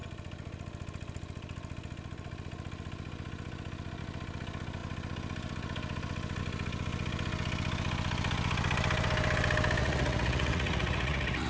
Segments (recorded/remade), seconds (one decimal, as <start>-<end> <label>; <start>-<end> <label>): 0.0-9.8 recorded; 9.8-11.5 remade